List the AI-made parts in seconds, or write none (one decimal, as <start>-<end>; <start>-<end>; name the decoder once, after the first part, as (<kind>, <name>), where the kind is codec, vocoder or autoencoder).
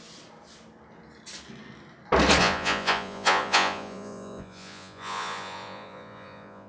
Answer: 2.4-6.7 (vocoder, Vocos)